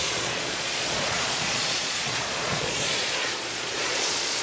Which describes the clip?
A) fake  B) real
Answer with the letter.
A